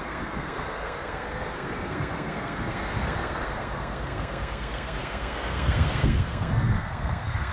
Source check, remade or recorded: remade